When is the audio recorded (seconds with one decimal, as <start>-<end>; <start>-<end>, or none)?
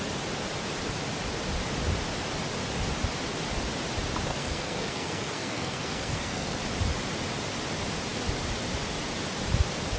0.0-4.3; 6.6-10.0